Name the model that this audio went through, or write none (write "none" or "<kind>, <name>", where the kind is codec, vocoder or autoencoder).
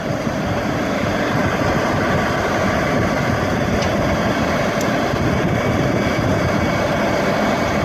none